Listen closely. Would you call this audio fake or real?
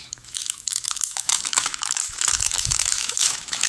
fake